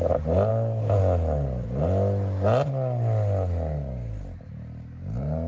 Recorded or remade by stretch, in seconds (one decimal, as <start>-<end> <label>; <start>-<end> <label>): 0.0-0.5 recorded; 0.5-1.0 remade; 1.0-5.5 recorded